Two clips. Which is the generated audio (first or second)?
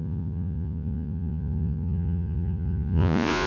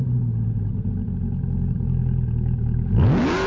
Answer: first